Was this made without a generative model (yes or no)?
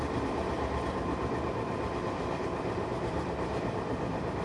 no